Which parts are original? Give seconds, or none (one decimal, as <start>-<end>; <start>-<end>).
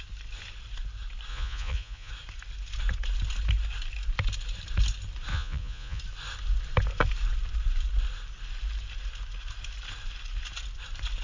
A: 0.0-1.3; 2.1-5.3; 6.0-11.2